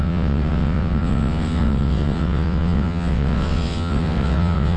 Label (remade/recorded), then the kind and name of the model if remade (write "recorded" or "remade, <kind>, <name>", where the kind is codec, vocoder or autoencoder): remade, vocoder, WaveNeXt